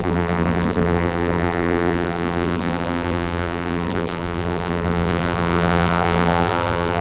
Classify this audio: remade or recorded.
remade